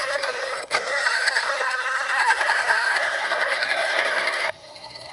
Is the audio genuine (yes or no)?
no